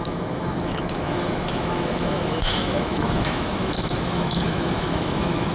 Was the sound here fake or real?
fake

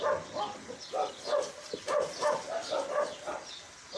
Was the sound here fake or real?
real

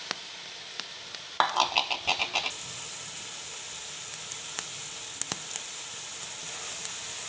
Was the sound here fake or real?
real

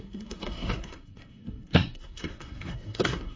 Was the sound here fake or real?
fake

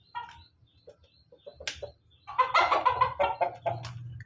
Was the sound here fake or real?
real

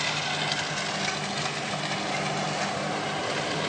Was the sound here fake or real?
real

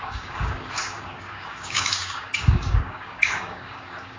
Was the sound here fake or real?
fake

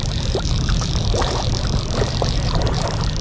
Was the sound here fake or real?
fake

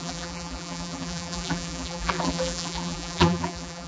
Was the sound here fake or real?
fake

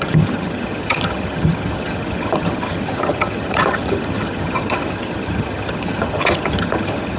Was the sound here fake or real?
fake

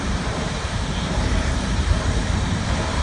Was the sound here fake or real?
fake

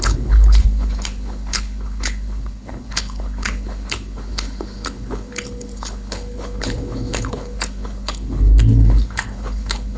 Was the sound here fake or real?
fake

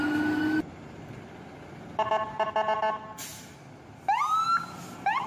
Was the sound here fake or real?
real